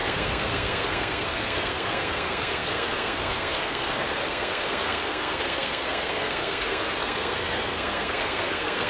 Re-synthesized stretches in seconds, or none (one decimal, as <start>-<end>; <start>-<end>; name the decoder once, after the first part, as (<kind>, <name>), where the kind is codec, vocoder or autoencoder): 0.0-8.9 (codec, SNAC)